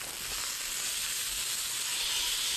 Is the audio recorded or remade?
recorded